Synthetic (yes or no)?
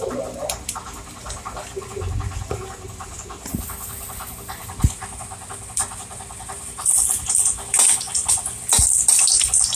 no